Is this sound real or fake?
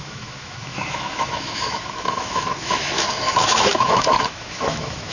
fake